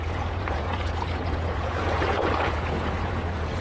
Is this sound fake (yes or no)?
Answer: yes